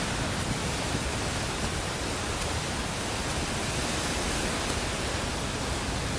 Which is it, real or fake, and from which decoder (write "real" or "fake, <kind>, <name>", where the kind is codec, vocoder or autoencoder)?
real